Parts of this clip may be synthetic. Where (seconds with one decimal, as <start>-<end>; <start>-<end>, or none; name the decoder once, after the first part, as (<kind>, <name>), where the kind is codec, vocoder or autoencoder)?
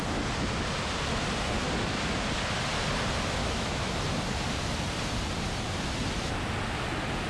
3.4-3.9 (autoencoder, DAC-VAE)